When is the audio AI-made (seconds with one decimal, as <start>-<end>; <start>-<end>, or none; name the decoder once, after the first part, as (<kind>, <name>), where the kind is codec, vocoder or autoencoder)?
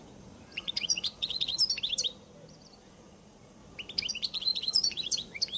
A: 0.0-1.6 (vocoder, Vocos); 2.8-3.6; 4.1-5.6